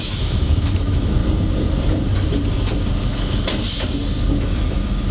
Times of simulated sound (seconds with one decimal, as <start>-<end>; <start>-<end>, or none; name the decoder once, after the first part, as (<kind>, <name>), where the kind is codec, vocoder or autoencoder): 0.0-1.2 (autoencoder, DAC-VAE); 4.3-5.1